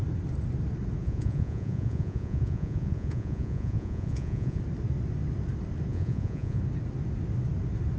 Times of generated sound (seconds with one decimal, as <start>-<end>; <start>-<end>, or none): 1.0-4.6; 5.9-6.6